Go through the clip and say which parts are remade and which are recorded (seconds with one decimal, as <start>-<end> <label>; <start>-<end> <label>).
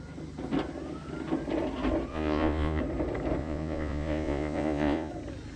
0.0-2.1 recorded; 2.1-2.8 remade; 2.8-3.4 recorded; 3.4-5.1 remade; 5.1-5.6 recorded